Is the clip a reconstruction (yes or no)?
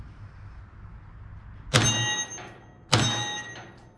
no